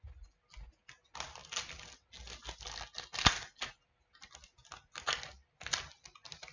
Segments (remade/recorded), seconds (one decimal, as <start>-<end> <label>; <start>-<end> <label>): 0.0-6.5 recorded